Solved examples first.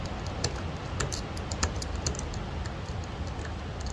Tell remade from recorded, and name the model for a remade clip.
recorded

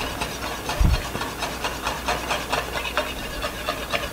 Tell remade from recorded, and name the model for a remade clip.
recorded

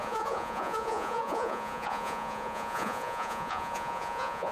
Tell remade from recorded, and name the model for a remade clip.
remade, vocoder, Vocos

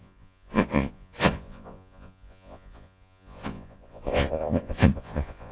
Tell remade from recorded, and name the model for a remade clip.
remade, vocoder, Vocos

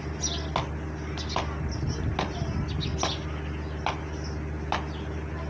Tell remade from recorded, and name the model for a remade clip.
recorded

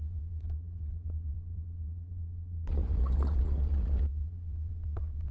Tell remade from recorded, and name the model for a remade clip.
remade, vocoder, Vocos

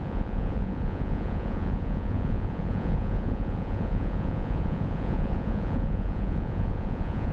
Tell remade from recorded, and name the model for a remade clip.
remade, vocoder, Vocos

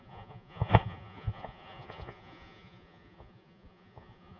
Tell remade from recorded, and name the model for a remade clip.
remade, vocoder, Vocos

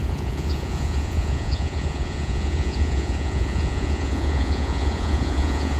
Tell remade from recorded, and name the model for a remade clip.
remade, vocoder, Vocos